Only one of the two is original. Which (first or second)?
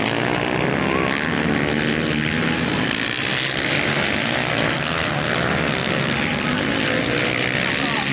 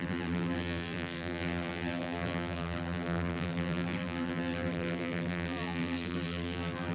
first